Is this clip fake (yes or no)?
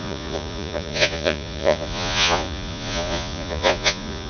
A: yes